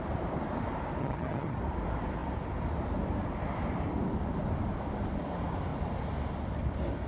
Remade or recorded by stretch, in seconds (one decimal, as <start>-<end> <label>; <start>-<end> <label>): 0.0-1.0 recorded; 1.0-1.6 remade; 1.6-7.1 recorded

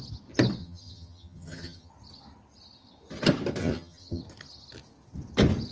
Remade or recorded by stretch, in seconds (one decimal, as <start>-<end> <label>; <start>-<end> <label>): 0.0-0.6 recorded; 0.6-1.9 remade; 1.9-3.6 recorded; 3.6-4.2 remade; 4.2-5.7 recorded

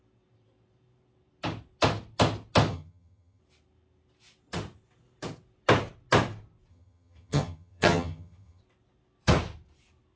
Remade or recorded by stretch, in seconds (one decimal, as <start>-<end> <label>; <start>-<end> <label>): 0.0-2.7 recorded; 2.7-3.4 remade; 3.4-6.7 recorded; 6.7-8.6 remade; 8.6-10.2 recorded

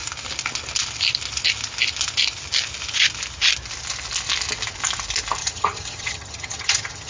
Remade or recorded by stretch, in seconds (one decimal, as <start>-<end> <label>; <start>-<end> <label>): 0.0-5.4 recorded; 5.4-7.1 remade

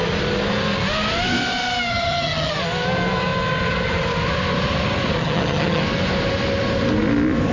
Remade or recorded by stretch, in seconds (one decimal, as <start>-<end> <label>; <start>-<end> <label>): 0.0-1.9 recorded; 1.9-2.5 remade; 2.5-5.2 recorded; 5.2-5.8 remade; 5.8-7.5 recorded

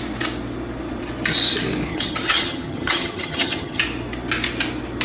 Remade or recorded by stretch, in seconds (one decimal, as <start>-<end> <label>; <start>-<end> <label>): 0.0-1.9 recorded; 1.9-3.8 remade; 3.8-5.0 recorded